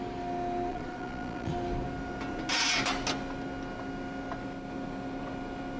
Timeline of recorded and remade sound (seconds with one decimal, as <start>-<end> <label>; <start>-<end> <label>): 0.0-0.7 recorded; 0.7-1.5 remade; 1.5-5.8 recorded